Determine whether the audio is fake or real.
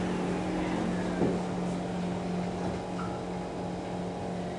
real